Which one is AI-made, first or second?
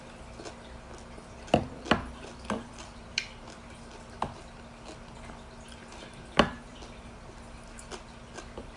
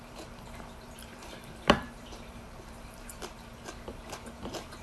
second